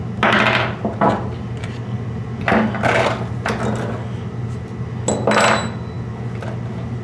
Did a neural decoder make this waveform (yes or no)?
no